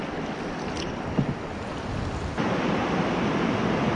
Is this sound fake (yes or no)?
no